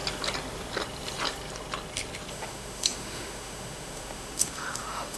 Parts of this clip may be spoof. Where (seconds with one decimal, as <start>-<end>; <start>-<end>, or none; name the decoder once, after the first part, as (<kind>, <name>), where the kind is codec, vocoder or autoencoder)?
2.3-5.2 (autoencoder, DAC-VAE)